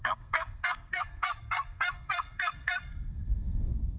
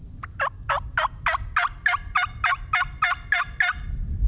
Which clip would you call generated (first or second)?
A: first